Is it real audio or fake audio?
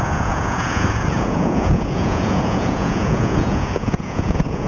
fake